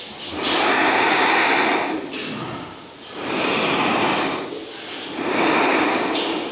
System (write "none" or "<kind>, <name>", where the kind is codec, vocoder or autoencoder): none